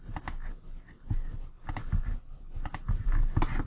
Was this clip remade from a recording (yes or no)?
no